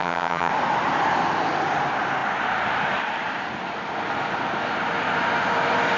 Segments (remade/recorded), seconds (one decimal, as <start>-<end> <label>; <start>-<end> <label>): 0.0-0.5 remade; 0.5-6.0 recorded